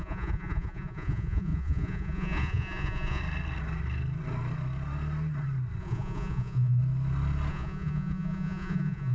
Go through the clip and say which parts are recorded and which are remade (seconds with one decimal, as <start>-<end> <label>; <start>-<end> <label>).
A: 0.0-3.2 remade; 3.2-5.8 recorded; 5.8-6.8 remade; 6.8-7.5 recorded; 7.5-9.1 remade